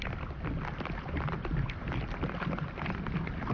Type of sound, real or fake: fake